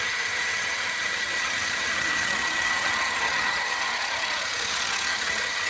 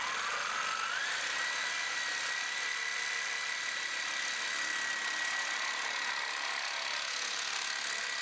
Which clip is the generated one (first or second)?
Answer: first